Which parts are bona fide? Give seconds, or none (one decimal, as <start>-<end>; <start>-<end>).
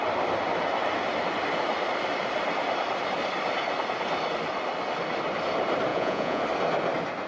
0.0-5.9; 6.4-7.3